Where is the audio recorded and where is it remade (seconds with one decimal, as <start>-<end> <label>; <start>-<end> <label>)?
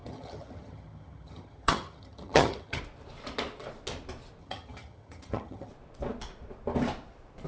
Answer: 0.0-2.8 remade; 2.8-4.4 recorded; 4.4-5.7 remade; 5.7-7.5 recorded